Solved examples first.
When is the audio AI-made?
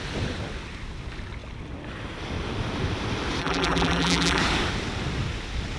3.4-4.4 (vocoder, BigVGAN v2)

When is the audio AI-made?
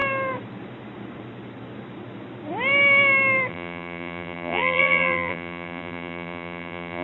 3.5-7.0 (vocoder, BigVGAN v2)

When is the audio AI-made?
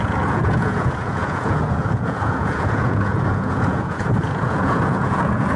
0.0-5.6 (vocoder, Vocos)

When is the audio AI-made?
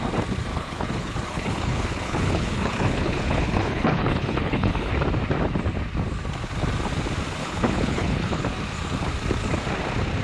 0.5-4.9 (codec, HILCodec); 7.4-8.4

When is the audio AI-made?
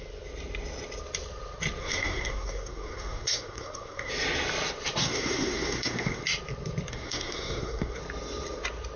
1.8-4.1 (codec, SNAC); 5.0-6.2; 6.9-8.0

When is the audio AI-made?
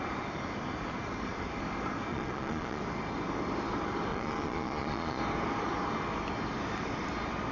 2.1-2.8 (vocoder, Vocos); 4.1-5.2